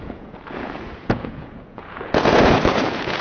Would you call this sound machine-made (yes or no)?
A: yes